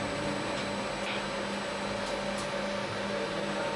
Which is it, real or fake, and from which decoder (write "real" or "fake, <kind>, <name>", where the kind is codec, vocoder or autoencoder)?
real